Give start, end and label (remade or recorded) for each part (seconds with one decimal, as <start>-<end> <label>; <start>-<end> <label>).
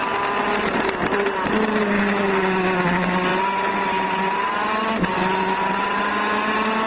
0.0-6.9 recorded